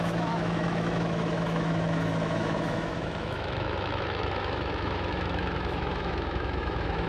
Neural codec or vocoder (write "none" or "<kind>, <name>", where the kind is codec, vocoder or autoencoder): autoencoder, DAC-VAE